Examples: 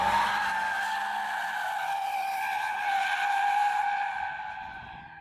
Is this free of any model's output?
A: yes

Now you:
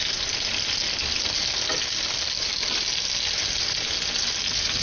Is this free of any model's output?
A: yes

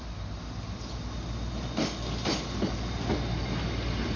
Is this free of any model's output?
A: yes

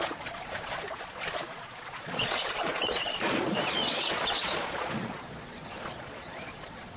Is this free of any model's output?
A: no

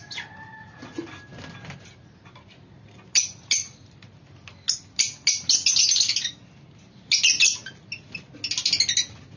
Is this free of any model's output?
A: yes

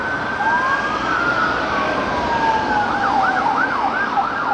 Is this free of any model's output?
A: yes